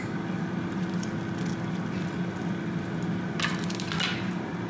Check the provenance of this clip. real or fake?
real